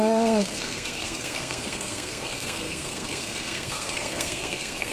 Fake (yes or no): yes